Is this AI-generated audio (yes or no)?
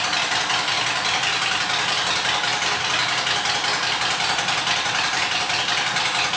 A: no